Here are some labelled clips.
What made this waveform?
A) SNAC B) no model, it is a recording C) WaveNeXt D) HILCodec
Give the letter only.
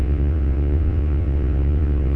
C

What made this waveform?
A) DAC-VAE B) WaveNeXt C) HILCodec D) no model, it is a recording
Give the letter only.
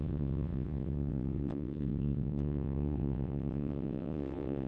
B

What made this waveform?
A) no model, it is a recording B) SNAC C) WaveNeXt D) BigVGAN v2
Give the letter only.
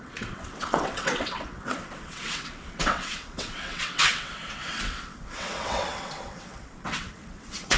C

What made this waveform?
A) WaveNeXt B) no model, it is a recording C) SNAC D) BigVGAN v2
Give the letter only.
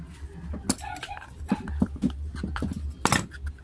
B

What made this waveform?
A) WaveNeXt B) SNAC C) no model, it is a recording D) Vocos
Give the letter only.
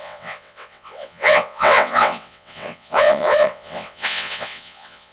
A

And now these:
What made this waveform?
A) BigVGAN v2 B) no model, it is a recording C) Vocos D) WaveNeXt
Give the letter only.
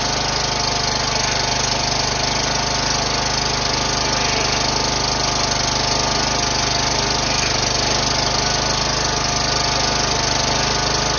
B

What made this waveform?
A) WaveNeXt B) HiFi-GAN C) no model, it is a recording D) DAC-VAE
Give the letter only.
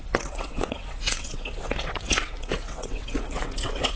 A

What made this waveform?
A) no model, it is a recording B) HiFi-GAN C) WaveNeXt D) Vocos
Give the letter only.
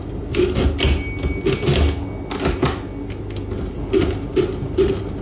A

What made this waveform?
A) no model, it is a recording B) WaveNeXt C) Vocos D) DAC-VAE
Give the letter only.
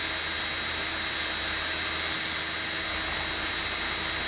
A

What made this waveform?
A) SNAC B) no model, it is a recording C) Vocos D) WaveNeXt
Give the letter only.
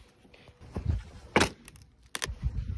B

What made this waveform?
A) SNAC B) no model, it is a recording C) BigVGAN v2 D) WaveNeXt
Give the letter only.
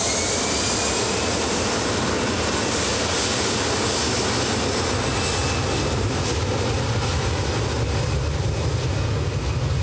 B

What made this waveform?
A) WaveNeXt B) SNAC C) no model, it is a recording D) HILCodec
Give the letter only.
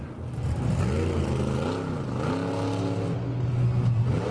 C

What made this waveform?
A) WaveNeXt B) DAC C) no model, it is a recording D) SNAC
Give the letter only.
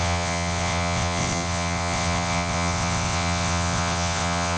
A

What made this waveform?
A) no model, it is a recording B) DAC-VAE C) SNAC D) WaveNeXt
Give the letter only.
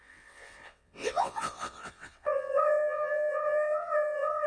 D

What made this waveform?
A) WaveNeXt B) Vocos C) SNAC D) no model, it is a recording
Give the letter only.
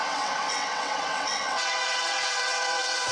A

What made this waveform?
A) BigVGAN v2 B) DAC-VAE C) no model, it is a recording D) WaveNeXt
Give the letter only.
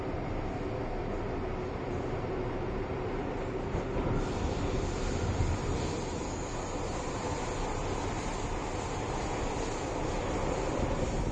C